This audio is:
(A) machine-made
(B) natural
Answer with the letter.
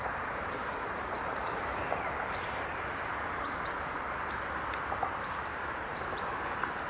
A